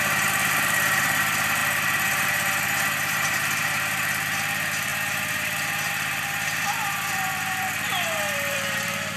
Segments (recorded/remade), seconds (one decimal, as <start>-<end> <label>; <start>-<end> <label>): 0.0-9.2 remade